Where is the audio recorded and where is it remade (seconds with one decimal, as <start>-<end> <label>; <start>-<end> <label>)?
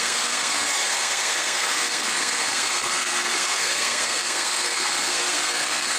0.0-6.0 remade